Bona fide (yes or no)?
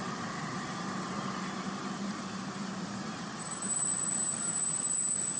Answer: no